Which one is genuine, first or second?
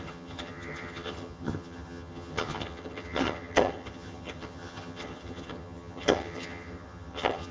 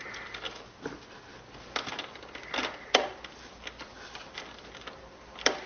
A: second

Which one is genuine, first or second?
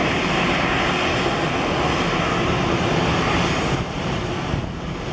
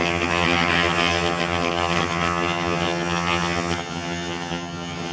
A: first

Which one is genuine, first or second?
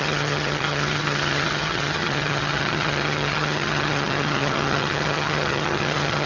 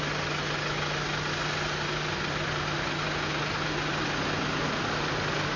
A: second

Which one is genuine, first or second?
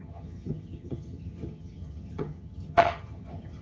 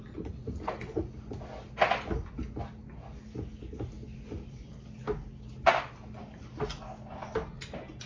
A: second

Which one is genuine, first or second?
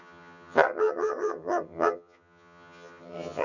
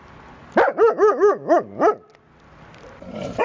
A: second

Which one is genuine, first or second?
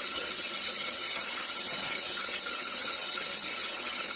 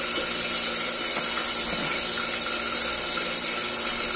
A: second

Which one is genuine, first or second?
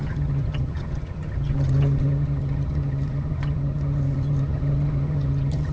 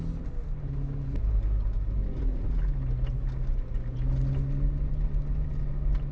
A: second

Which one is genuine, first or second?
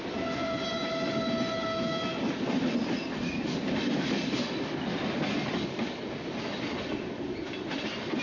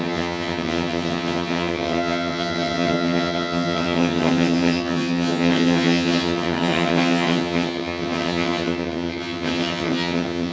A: first